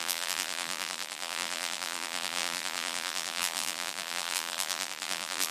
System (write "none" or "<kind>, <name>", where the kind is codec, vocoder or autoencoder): vocoder, BigVGAN v2